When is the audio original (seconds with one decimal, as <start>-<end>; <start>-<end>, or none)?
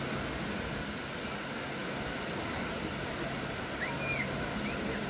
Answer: 0.0-5.1